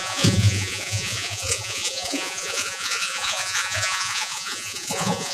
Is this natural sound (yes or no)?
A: no